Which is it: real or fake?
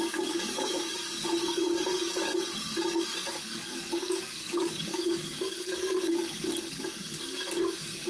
fake